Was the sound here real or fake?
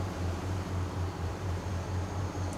fake